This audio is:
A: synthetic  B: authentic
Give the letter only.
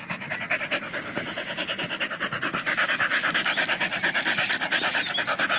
B